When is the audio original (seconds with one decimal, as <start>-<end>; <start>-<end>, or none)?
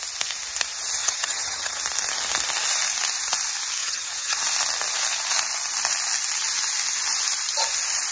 0.0-1.0; 1.8-3.8; 4.4-8.1